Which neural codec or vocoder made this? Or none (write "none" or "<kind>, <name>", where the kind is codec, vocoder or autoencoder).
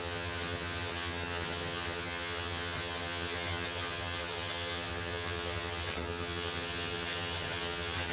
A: vocoder, HiFi-GAN